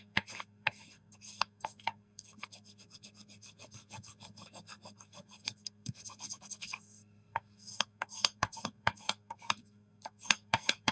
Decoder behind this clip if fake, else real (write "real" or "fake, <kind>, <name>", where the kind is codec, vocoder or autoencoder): fake, codec, SNAC